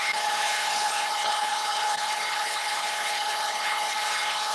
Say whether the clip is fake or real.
fake